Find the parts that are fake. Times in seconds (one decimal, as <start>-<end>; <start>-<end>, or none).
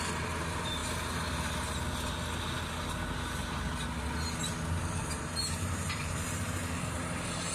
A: 0.0-0.8; 4.8-7.5